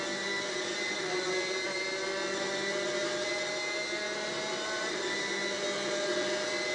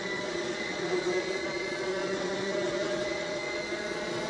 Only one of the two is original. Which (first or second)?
first